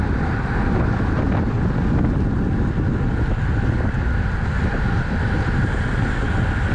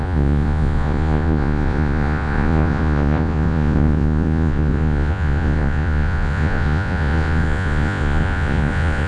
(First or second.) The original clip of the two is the first